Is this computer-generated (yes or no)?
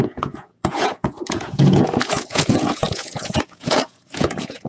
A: yes